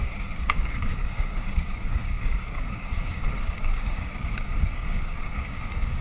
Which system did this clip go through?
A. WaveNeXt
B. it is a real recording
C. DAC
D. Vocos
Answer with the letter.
C